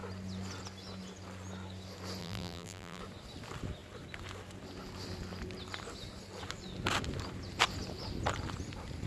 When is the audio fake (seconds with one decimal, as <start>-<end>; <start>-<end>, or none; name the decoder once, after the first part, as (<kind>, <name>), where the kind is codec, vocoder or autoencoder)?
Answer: 2.2-3.0 (vocoder, BigVGAN v2)